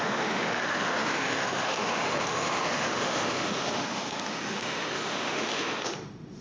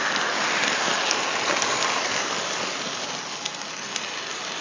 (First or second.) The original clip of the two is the second